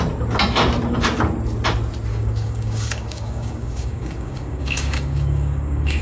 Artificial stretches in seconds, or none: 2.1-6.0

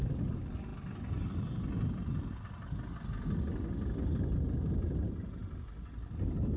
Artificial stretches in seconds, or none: none

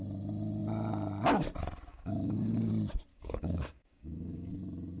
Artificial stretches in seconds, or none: 1.9-2.7; 3.1-4.5

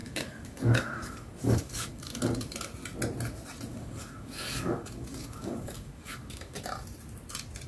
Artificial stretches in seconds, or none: 0.0-2.2; 3.7-6.6